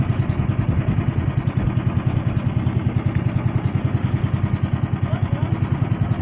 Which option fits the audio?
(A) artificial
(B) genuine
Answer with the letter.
B